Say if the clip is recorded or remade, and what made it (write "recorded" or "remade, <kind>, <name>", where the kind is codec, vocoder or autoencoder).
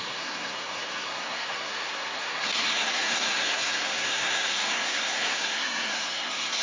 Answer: remade, codec, SNAC